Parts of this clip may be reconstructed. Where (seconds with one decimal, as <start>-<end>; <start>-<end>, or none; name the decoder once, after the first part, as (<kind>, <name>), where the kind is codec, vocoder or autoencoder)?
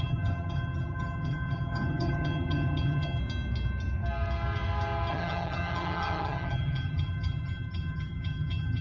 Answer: 0.0-3.2 (vocoder, HiFi-GAN); 5.1-8.8